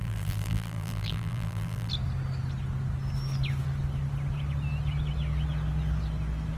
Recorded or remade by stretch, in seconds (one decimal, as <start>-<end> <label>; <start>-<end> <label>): 0.0-1.9 remade; 1.9-6.6 recorded